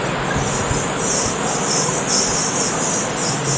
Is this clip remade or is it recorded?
recorded